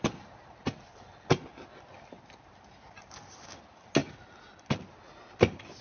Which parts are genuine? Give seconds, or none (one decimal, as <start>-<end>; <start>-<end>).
0.0-5.8